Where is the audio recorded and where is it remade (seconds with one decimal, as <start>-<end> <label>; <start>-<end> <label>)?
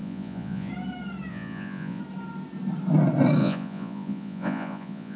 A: 0.0-0.7 remade; 0.7-1.3 recorded; 1.3-2.0 remade; 2.0-3.4 recorded; 3.4-5.2 remade